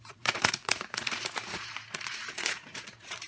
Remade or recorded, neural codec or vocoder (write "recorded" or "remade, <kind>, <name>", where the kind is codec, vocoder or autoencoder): remade, vocoder, Vocos